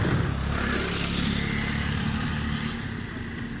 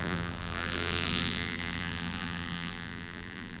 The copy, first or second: second